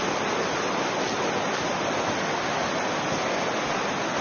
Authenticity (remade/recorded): recorded